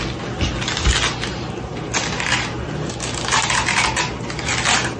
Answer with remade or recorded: recorded